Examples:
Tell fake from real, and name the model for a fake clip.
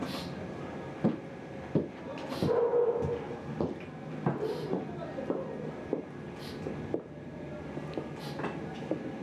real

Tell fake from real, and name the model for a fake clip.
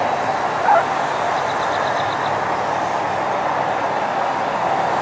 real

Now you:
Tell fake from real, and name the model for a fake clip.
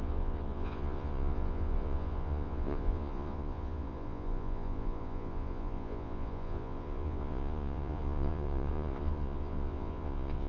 fake, vocoder, Vocos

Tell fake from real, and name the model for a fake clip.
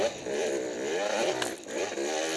real